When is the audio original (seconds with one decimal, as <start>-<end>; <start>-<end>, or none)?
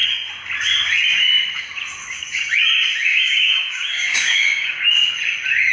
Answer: 0.0-3.1; 4.8-5.7